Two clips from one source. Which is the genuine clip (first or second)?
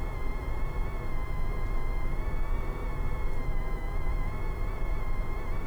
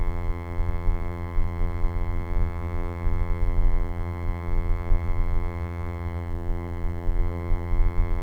first